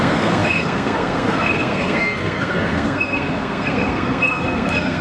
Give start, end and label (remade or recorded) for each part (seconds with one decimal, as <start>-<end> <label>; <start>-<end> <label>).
0.0-5.0 remade